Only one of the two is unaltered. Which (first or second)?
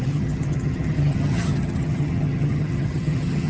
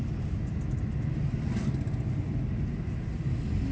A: second